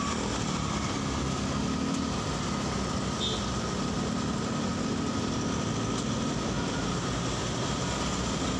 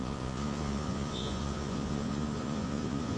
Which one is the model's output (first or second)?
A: second